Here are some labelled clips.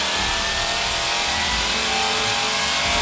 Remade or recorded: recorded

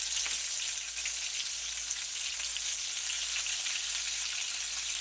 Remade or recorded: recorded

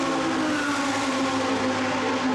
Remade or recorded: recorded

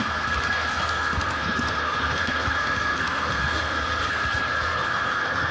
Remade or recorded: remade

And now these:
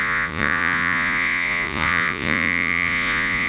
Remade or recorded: remade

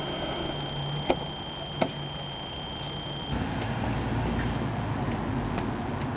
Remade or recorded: recorded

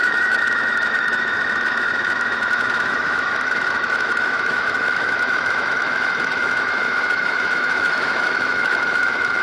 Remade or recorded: remade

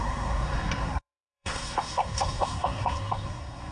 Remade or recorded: remade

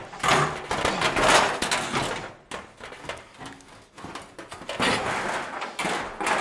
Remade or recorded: recorded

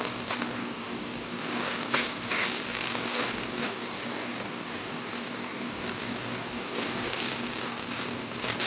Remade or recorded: remade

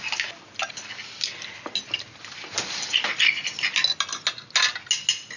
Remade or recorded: recorded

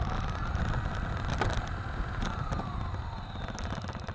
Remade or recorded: recorded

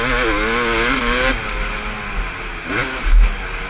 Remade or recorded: recorded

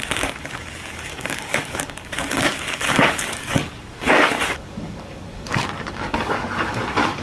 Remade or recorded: remade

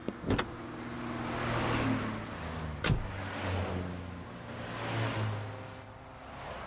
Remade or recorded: recorded